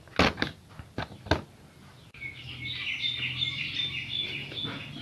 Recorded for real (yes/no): yes